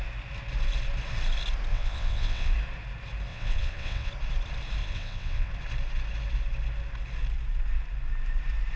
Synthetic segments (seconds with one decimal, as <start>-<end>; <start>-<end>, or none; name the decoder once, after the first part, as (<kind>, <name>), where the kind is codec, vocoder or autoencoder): 1.7-2.5 (vocoder, WaveNeXt); 3.3-4.1; 4.8-5.5